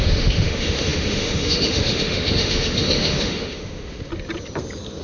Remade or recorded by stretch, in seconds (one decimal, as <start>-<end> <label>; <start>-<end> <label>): 0.0-4.1 remade; 4.1-5.0 recorded